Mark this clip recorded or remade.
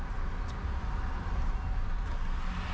recorded